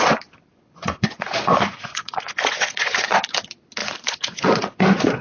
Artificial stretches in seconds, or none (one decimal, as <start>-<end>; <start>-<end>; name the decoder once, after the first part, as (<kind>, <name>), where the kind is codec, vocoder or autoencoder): 0.5-3.2 (vocoder, Vocos); 3.8-5.2